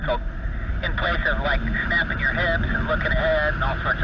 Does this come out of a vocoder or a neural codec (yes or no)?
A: no